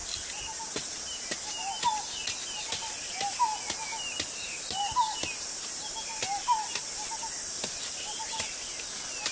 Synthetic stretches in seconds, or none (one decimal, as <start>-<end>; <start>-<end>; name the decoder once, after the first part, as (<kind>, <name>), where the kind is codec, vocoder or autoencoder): none